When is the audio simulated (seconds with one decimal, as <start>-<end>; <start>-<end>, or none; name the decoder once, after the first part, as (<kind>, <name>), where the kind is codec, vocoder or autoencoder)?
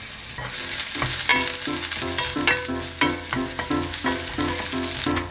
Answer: none